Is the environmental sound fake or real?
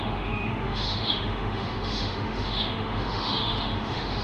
fake